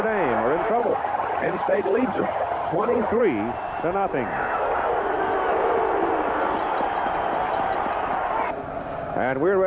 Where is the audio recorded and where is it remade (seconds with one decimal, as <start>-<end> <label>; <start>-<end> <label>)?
0.0-0.8 recorded; 0.8-3.2 remade; 3.2-9.7 recorded